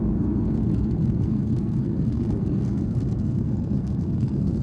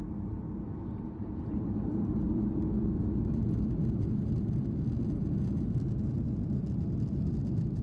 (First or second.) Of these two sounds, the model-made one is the first